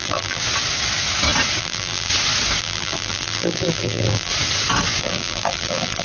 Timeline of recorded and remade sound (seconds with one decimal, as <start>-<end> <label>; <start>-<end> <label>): 0.0-0.4 remade; 0.4-1.6 recorded; 1.6-2.1 remade; 2.1-2.6 recorded; 2.6-4.3 remade; 4.3-5.0 recorded; 5.0-6.0 remade